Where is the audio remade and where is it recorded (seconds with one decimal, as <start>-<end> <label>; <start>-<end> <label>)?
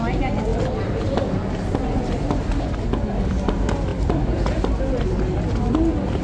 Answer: 0.0-3.9 recorded; 3.9-4.6 remade; 4.6-6.2 recorded